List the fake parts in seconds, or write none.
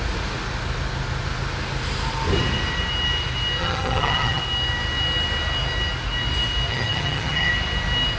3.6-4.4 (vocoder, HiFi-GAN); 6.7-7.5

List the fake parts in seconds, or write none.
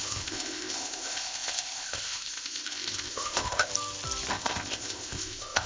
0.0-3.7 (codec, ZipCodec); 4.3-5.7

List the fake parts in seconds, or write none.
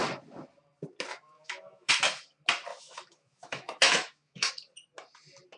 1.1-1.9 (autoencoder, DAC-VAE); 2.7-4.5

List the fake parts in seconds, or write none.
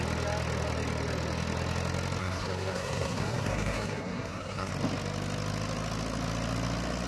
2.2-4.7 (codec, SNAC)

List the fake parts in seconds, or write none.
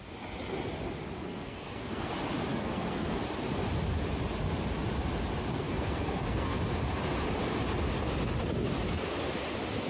1.2-2.1 (codec, SNAC); 2.5-3.2; 5.5-6.6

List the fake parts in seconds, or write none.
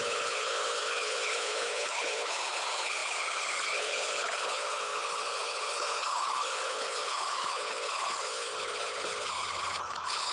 0.0-10.3 (codec, HILCodec)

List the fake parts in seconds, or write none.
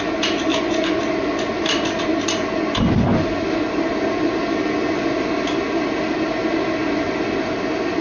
0.5-1.0 (vocoder, Vocos)